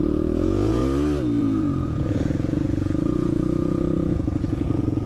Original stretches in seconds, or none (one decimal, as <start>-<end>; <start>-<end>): 0.8-1.4